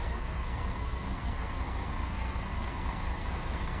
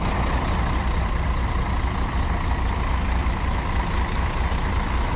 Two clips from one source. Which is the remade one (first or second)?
first